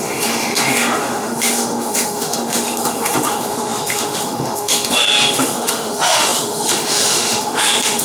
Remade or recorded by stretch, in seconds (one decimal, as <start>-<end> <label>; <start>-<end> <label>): 0.0-8.0 remade